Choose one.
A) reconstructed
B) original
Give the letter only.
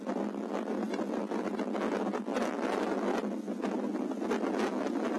B